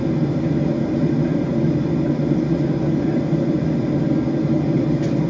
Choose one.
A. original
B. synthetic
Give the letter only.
A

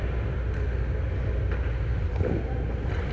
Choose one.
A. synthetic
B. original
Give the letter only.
B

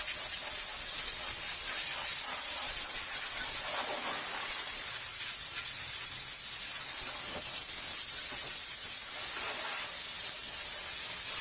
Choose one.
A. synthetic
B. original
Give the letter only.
B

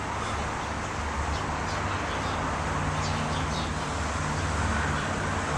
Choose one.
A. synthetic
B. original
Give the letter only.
B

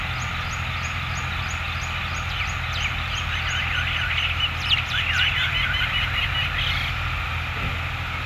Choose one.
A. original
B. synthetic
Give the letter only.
A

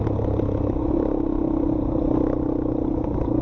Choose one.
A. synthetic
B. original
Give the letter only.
B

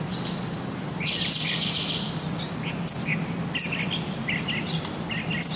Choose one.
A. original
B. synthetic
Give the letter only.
A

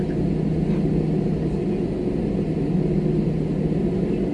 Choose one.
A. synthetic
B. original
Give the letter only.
B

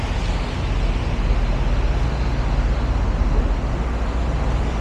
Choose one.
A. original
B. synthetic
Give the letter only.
A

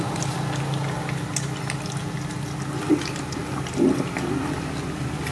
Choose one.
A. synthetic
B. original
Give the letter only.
B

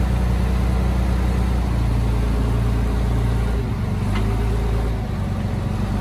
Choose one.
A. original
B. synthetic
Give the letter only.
A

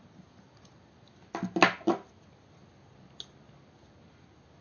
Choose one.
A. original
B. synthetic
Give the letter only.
A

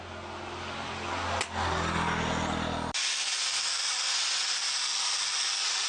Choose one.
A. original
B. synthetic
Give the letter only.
A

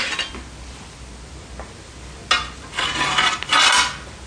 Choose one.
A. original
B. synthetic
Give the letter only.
A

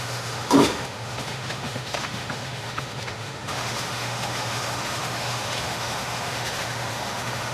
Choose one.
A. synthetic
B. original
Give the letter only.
A